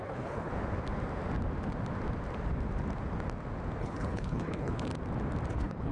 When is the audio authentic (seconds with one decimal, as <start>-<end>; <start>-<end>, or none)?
0.5-3.8; 4.9-5.5